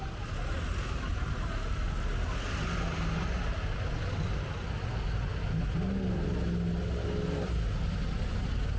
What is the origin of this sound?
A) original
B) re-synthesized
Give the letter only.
A